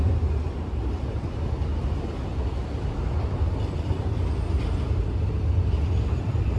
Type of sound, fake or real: real